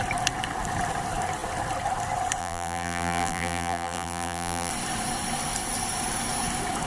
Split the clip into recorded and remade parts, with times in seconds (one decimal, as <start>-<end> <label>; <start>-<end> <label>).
0.0-2.4 recorded; 2.4-4.7 remade; 4.7-6.9 recorded

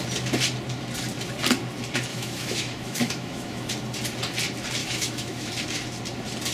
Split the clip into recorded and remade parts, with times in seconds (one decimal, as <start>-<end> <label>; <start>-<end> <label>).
0.0-2.1 recorded; 2.1-3.7 remade; 3.7-4.8 recorded; 4.8-5.5 remade; 5.5-6.5 recorded